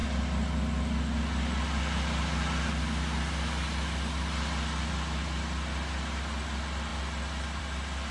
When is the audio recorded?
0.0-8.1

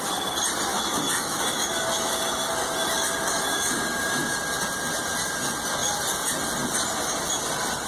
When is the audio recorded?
0.0-0.7; 4.4-7.9

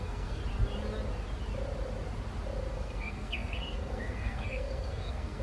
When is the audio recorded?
0.4-2.7